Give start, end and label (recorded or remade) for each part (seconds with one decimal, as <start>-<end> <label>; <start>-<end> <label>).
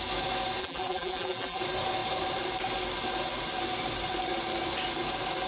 0.0-0.6 recorded; 0.6-1.6 remade; 1.6-5.5 recorded